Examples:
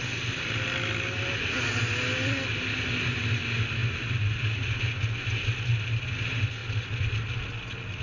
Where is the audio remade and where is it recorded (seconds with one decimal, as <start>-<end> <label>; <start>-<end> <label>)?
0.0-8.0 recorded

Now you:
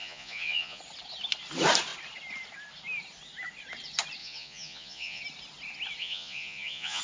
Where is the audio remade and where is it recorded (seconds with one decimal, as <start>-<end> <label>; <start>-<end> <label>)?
0.0-0.8 remade; 0.8-4.2 recorded; 4.2-5.2 remade; 5.2-6.0 recorded; 6.0-7.0 remade

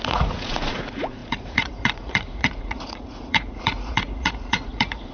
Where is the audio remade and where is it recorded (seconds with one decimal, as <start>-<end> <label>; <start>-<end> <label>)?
0.0-5.1 remade